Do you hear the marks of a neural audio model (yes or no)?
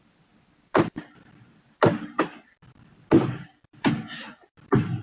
no